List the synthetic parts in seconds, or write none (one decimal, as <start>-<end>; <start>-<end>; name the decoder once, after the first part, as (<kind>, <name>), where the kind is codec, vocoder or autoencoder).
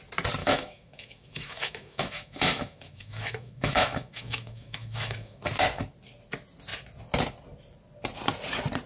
0.4-5.4 (autoencoder, DAC-VAE)